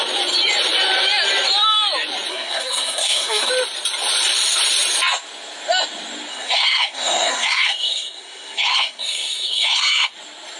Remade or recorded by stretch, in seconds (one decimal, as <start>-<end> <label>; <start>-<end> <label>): 0.0-2.3 recorded; 2.3-3.5 remade; 3.5-6.3 recorded; 6.3-10.1 remade; 10.1-10.6 recorded